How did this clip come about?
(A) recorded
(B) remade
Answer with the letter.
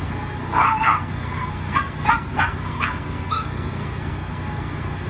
B